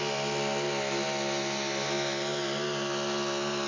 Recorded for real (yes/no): yes